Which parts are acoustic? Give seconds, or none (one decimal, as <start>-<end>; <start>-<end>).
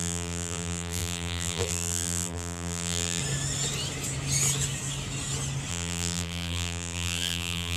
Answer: 3.2-5.7